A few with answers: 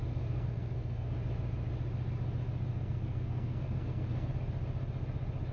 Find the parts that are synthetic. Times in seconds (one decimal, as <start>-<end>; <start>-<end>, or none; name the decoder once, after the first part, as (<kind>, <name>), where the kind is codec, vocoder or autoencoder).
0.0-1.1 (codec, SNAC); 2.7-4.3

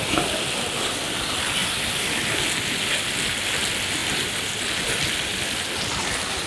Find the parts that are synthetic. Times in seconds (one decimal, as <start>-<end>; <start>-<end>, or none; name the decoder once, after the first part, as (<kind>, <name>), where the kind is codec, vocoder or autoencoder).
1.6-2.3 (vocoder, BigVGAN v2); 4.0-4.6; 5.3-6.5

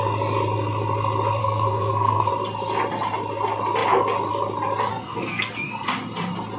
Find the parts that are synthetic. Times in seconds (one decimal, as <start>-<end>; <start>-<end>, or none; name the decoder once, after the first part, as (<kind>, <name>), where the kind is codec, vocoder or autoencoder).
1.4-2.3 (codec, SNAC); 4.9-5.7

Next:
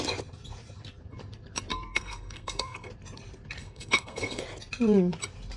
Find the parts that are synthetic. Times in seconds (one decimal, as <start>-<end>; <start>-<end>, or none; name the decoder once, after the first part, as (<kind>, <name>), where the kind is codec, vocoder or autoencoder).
1.7-2.9 (codec, SNAC); 3.6-4.4